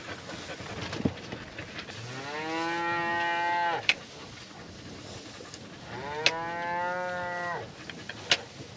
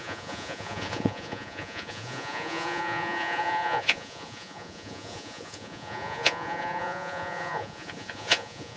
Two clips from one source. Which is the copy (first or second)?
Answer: second